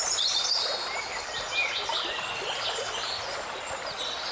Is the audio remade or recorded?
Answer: recorded